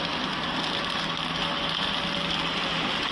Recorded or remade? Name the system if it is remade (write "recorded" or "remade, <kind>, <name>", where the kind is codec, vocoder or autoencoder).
recorded